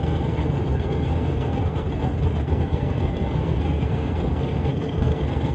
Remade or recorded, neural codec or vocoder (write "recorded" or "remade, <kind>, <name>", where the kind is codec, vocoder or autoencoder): remade, codec, SNAC